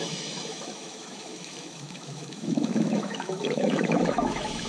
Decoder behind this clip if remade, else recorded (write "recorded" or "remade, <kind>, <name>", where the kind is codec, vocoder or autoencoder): remade, autoencoder, DAC-VAE